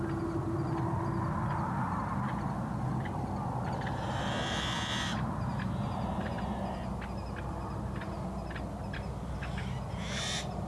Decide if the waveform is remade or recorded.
recorded